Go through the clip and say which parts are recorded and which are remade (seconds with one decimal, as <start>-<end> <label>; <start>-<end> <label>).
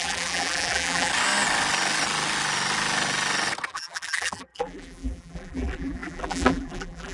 0.0-1.1 remade; 1.1-3.7 recorded; 3.7-7.1 remade